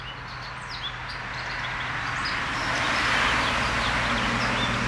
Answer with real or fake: real